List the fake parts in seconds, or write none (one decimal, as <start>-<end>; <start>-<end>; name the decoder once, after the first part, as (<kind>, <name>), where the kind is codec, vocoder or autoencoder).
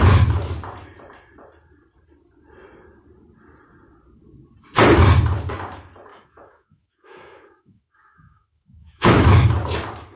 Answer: 6.1-9.5 (autoencoder, DAC-VAE)